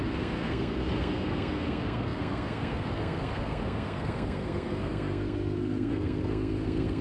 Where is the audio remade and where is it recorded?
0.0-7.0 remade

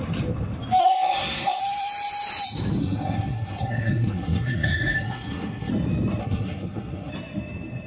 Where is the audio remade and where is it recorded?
0.0-0.8 recorded; 0.8-1.6 remade; 1.6-2.8 recorded; 2.8-5.7 remade; 5.7-6.2 recorded; 6.2-7.1 remade; 7.1-7.9 recorded

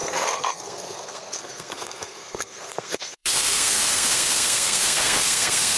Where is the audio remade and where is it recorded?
0.0-5.8 remade

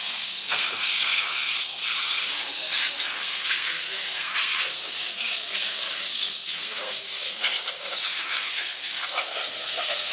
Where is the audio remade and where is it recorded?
0.0-10.1 remade

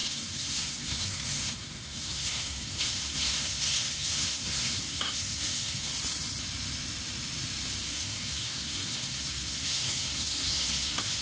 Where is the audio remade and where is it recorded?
0.0-5.9 remade; 5.9-7.9 recorded; 7.9-11.2 remade